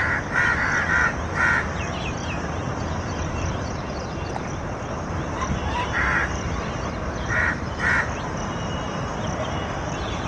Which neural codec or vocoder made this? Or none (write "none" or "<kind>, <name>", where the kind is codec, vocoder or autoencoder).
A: vocoder, BigVGAN v2